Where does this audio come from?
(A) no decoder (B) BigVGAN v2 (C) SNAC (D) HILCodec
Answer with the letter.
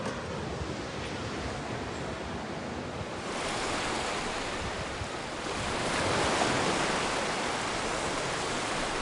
A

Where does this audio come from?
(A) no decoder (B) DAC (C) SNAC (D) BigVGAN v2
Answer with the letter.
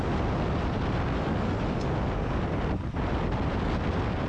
A